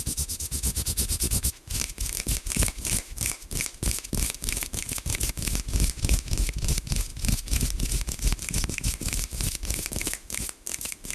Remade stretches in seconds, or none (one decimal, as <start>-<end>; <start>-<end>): 0.0-11.1